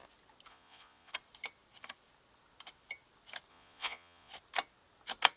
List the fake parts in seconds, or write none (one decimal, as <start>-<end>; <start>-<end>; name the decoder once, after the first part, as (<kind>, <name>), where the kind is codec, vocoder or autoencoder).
0.5-1.1 (vocoder, Vocos); 3.5-4.3